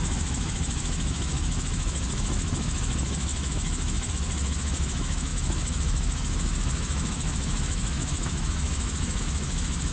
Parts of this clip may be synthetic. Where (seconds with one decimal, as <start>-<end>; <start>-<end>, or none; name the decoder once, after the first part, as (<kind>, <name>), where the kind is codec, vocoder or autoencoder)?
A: 0.0-9.9 (autoencoder, DAC-VAE)